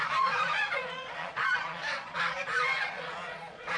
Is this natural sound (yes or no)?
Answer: no